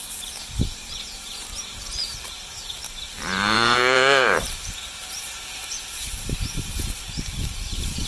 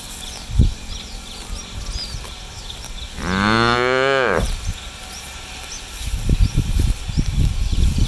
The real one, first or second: second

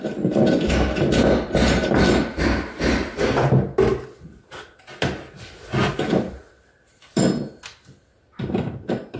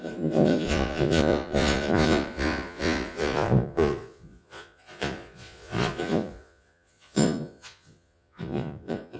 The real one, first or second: first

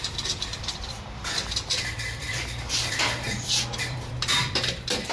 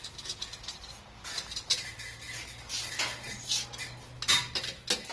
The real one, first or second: second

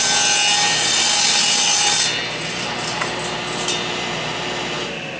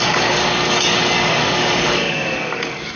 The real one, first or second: first